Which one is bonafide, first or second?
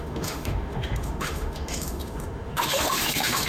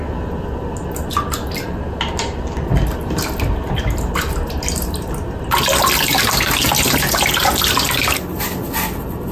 second